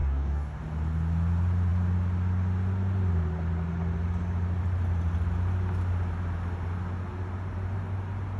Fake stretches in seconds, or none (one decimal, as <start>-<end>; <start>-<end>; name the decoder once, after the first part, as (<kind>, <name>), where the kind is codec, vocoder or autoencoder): 0.0-0.6 (codec, DAC)